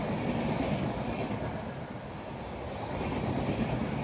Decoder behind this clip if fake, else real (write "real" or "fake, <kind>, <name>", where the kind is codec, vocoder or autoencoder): real